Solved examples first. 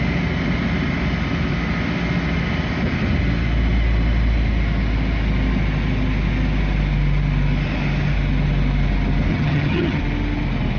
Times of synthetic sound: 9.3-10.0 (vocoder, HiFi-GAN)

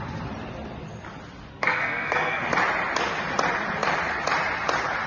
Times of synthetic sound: 1.5-2.4 (codec, SNAC)

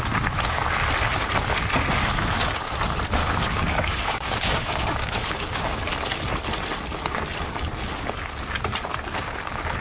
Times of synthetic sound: 3.2-5.8 (codec, DAC)

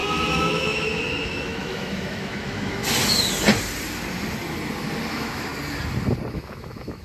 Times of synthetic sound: 0.0-2.8 (autoencoder, DAC-VAE); 5.1-5.5; 6.3-7.0